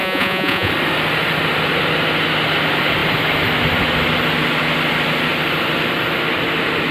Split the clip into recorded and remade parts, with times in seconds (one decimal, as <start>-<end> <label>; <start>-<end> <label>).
0.0-0.7 remade; 0.7-6.9 recorded

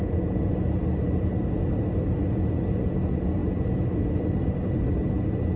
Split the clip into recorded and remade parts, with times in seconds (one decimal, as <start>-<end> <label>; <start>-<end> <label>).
0.0-5.6 recorded

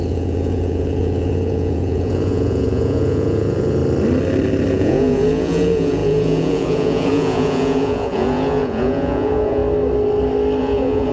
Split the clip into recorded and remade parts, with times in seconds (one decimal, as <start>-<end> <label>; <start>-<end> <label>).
0.0-3.8 remade; 3.8-4.7 recorded; 4.7-9.6 remade; 9.6-10.6 recorded; 10.6-11.1 remade